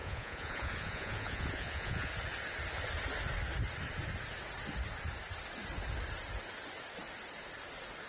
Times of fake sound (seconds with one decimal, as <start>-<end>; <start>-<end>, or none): 0.0-2.1